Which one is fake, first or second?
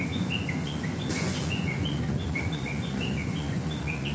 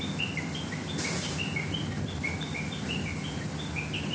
first